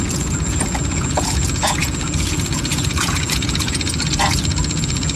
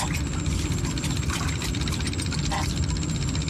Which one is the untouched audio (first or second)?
second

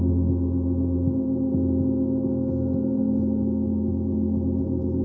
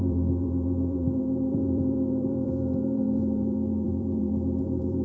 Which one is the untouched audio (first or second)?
first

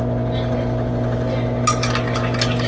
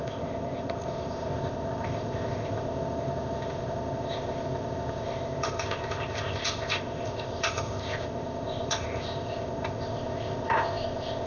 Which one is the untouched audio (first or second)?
first